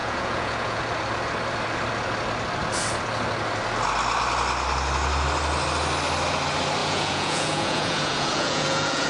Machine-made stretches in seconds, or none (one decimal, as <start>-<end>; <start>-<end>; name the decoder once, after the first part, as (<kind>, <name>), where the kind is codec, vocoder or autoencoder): 0.0-0.8 (vocoder, Vocos); 6.8-9.1